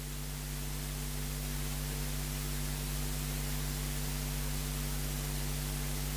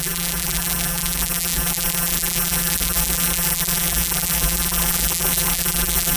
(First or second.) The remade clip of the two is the second